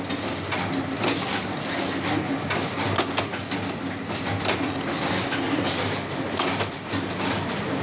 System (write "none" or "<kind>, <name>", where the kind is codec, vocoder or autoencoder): none